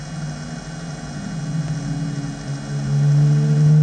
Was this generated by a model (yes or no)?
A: no